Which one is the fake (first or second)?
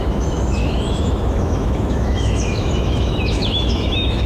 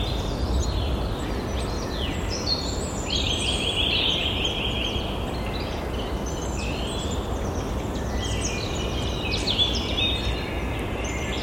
first